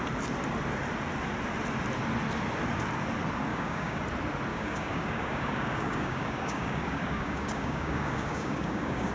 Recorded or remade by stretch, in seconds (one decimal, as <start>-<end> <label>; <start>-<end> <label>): 0.0-3.5 recorded; 3.5-4.0 remade; 4.0-4.5 recorded; 4.5-9.1 remade